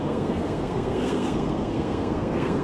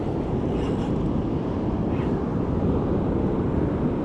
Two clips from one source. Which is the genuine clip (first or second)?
second